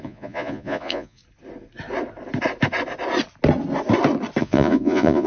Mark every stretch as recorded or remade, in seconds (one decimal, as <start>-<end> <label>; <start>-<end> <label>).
0.0-1.2 remade; 1.2-4.4 recorded; 4.4-5.3 remade